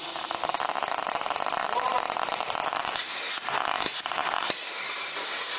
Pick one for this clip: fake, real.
fake